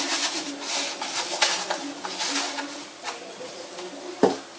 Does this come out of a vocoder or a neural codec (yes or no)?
no